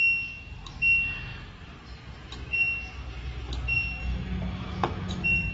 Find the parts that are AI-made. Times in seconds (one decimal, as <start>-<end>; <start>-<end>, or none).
4.0-5.5

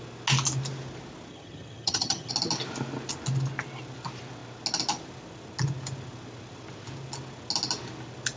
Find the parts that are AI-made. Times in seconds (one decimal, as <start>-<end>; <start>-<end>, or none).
1.3-2.3

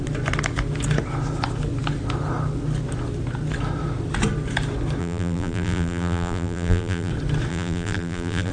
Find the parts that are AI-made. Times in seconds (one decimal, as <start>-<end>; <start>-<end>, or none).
5.0-7.1; 7.5-8.5

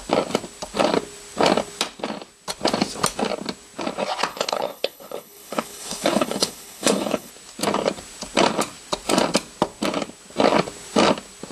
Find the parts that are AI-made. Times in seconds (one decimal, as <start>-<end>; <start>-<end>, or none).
4.3-7.3

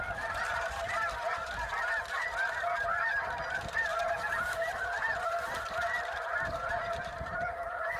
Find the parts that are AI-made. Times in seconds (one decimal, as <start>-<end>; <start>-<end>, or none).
0.0-8.0

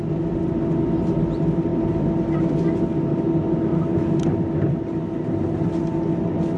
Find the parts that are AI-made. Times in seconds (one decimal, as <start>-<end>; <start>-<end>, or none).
none